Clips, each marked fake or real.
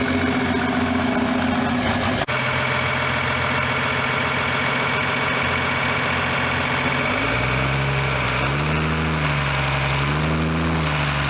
real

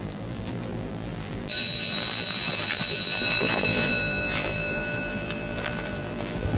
fake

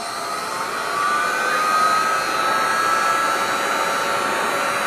real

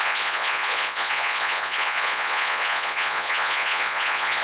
fake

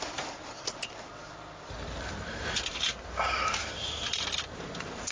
real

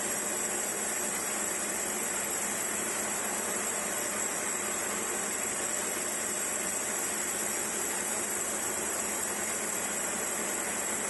real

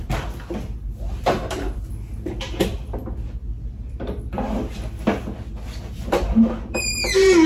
real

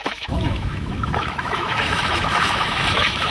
fake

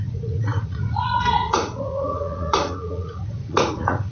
fake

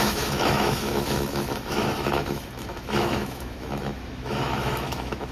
fake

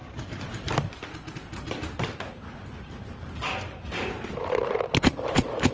fake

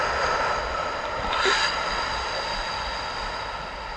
real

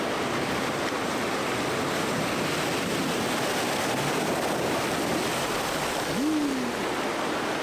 real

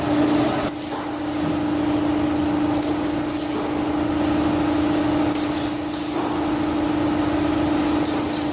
real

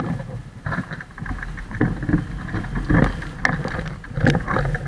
real